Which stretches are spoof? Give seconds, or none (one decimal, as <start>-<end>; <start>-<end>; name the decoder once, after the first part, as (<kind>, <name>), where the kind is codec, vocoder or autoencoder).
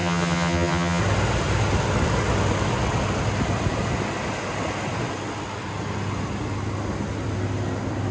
0.0-1.0 (vocoder, HiFi-GAN)